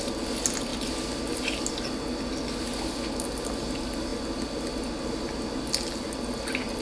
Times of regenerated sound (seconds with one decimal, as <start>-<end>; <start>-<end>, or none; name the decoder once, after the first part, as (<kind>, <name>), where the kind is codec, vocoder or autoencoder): none